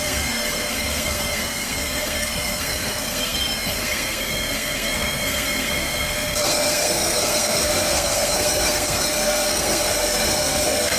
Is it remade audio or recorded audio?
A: remade